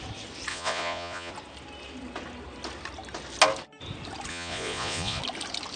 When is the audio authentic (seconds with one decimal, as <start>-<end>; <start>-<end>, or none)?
0.0-0.5; 1.3-4.3; 5.2-5.8